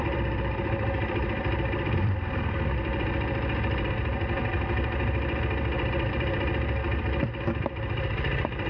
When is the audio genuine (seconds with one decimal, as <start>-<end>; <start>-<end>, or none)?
2.9-3.9; 4.4-7.0